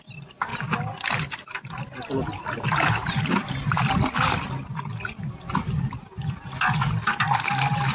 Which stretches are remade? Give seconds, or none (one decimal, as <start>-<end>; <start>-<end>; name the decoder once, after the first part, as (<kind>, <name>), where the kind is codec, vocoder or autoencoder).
none